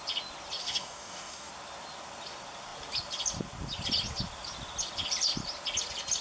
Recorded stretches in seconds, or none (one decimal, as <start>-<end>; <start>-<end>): 0.0-0.6; 1.5-6.2